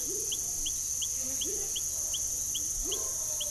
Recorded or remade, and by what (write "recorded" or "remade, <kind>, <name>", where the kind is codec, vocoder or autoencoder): recorded